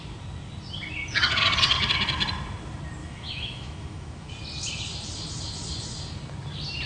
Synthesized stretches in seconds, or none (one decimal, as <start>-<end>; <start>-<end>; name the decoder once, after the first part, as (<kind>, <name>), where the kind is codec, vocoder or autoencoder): 3.0-4.3 (autoencoder, DAC-VAE)